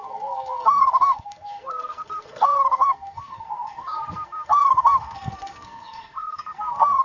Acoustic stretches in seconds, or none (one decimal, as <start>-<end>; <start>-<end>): none